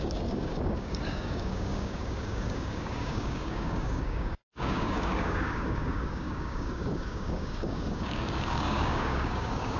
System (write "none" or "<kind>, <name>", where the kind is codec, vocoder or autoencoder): codec, DAC